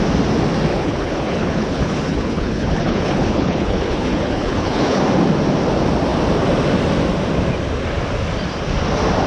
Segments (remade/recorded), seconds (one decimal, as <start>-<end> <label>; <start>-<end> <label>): 0.0-0.7 recorded; 0.7-5.0 remade; 5.0-9.3 recorded